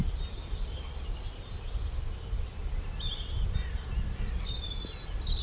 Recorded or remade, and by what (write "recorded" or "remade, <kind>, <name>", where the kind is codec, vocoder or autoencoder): recorded